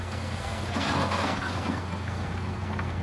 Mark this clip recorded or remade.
remade